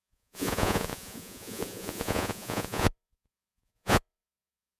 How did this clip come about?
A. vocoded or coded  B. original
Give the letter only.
A